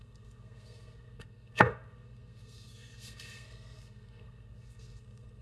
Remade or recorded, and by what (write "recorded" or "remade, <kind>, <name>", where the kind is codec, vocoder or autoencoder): remade, codec, SNAC